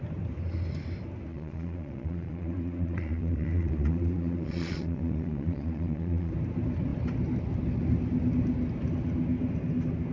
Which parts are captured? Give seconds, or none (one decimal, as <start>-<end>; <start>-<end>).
0.0-1.3; 6.3-10.1